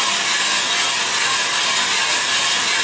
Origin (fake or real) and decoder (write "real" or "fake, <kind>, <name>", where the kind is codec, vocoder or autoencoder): real